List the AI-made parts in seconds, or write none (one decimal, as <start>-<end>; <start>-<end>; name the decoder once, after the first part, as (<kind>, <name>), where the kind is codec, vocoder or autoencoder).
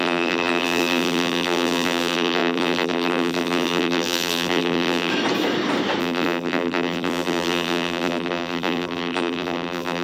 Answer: 0.0-5.1 (vocoder, BigVGAN v2); 6.0-10.0